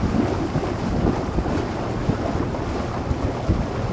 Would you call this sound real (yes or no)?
yes